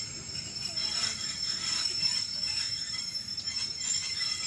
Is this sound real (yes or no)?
yes